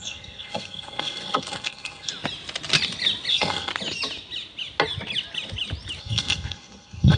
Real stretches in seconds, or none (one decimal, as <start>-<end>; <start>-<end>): 2.1-3.3; 3.7-6.0